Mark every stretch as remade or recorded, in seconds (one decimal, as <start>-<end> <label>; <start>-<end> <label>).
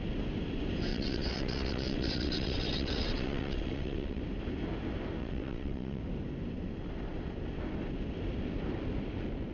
0.0-0.9 recorded; 0.9-4.2 remade; 4.2-5.2 recorded; 5.2-6.0 remade; 6.0-9.5 recorded